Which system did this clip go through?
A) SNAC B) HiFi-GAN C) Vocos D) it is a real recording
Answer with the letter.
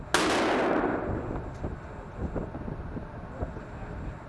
D